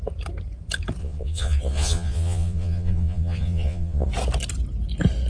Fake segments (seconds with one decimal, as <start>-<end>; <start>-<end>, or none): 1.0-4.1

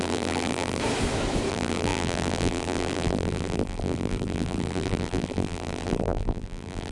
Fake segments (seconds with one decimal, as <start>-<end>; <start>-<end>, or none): 0.0-0.8; 1.5-6.9

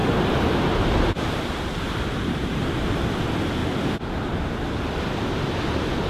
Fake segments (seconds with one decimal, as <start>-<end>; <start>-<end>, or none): 0.0-2.6

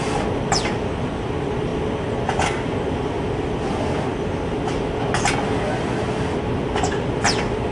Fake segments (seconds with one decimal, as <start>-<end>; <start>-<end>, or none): none